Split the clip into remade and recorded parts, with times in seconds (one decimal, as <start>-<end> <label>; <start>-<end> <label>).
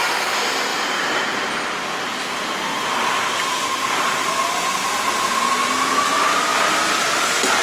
0.0-7.6 recorded